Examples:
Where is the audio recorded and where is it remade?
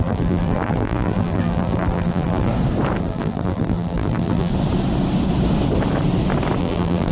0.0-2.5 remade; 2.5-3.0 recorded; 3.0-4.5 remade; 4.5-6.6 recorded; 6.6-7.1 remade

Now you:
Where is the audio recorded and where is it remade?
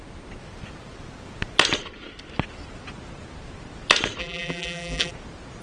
0.0-4.2 recorded; 4.2-5.1 remade; 5.1-5.6 recorded